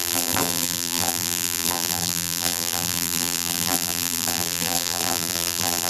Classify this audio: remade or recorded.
remade